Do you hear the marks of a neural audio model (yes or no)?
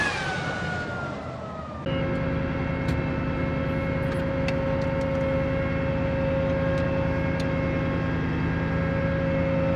no